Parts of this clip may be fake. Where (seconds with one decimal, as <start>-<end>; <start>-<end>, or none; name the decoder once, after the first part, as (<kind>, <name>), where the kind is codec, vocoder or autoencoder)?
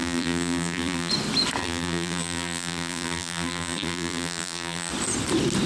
0.0-1.1 (vocoder, BigVGAN v2); 1.6-4.9